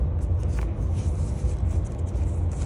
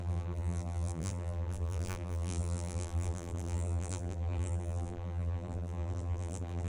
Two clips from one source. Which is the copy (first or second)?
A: second